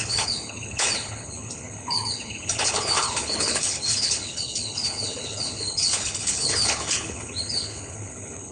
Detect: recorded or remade remade